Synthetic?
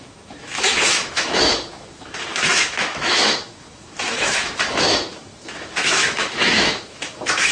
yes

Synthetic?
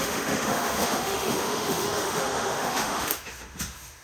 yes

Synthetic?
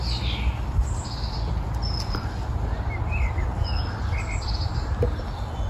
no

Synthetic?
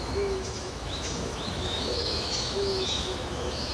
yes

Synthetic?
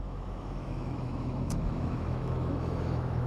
yes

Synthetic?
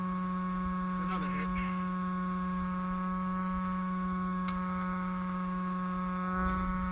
yes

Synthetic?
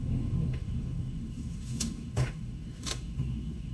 yes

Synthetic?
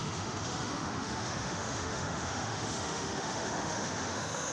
yes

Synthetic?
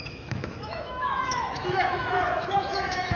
yes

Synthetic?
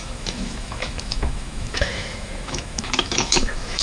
yes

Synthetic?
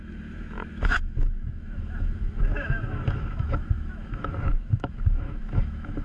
yes